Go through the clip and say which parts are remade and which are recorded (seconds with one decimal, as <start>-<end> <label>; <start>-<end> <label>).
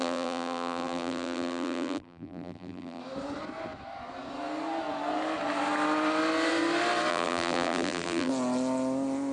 0.0-3.0 remade; 3.0-7.1 recorded; 7.1-8.3 remade; 8.3-9.3 recorded